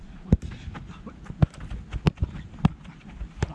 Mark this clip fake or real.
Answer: real